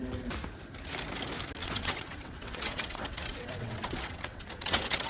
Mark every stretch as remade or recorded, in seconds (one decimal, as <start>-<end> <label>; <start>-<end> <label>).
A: 0.0-1.6 recorded; 1.6-5.1 remade